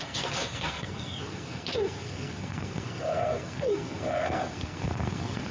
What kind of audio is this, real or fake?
fake